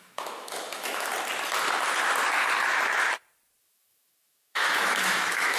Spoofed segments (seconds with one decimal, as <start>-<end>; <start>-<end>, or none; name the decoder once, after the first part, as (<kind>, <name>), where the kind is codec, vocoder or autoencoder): 0.0-1.1 (autoencoder, DAC-VAE); 3.6-5.6